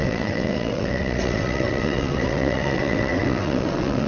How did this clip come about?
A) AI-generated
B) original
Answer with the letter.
A